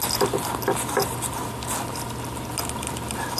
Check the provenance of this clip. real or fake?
real